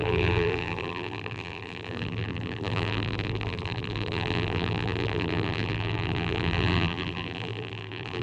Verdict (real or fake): fake